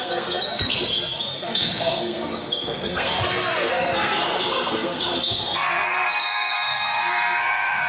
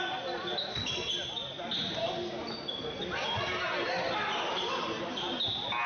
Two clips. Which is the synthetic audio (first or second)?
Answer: first